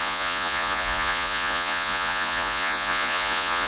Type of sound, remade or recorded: remade